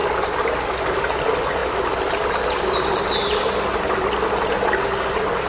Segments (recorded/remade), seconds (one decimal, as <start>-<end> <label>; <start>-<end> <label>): 0.0-5.5 recorded